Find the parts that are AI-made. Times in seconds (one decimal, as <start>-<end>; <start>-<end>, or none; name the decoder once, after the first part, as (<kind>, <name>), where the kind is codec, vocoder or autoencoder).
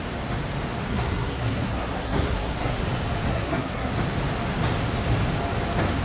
0.9-2.8 (codec, SNAC); 3.3-3.9